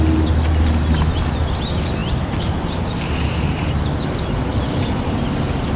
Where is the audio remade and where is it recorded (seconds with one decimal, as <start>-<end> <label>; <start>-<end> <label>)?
0.0-5.8 recorded